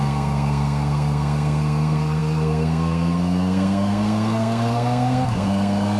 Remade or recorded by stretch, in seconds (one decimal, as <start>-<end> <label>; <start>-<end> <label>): 0.0-6.0 remade